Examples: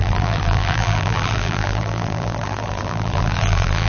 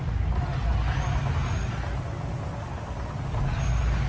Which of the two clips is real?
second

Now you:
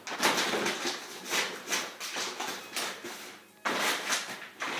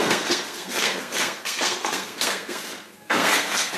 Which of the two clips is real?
first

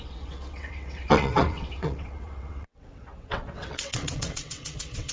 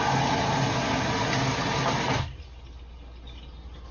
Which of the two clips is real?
second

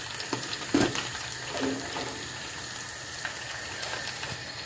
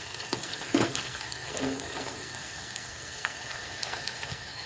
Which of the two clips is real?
first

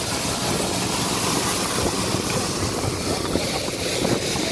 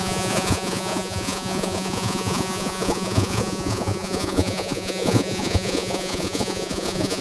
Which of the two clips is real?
first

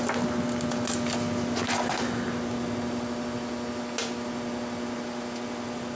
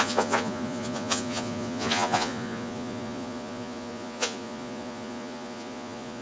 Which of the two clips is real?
first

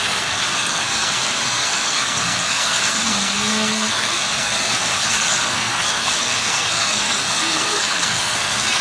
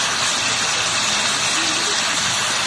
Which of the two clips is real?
second